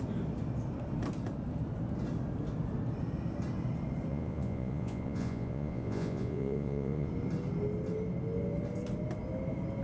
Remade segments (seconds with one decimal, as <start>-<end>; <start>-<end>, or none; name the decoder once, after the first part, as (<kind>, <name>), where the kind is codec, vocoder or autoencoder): 4.1-7.1 (vocoder, Vocos)